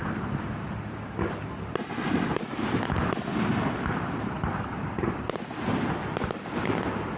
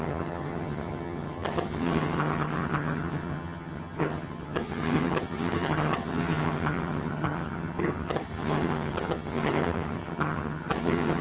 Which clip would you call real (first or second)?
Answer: first